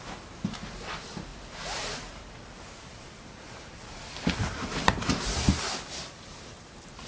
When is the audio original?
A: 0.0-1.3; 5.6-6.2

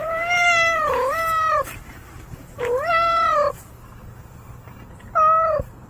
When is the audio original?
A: 3.9-5.5

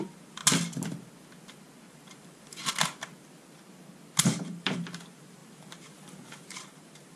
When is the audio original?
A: 0.4-1.9; 2.6-4.2

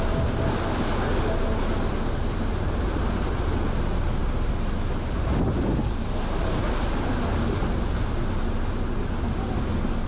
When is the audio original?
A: 0.0-10.1

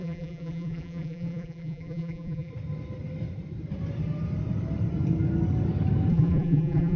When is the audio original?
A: 2.5-6.1

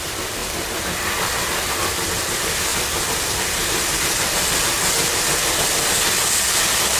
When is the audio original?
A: 0.0-7.0

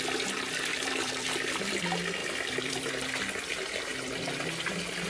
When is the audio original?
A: 0.0-0.7; 1.7-2.2; 2.9-5.1